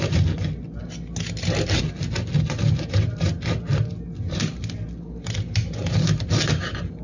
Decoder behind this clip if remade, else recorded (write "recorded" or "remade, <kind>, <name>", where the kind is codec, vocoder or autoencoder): recorded